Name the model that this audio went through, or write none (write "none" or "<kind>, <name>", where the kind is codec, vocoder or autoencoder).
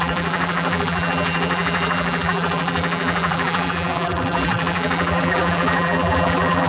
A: vocoder, BigVGAN v2